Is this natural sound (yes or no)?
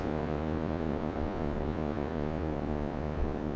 no